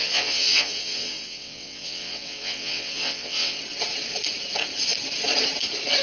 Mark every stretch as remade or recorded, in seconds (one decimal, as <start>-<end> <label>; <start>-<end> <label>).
0.0-3.6 remade; 3.6-6.0 recorded